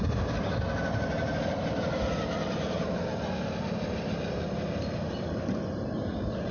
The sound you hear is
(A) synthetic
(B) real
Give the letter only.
B